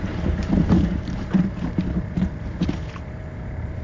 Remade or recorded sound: remade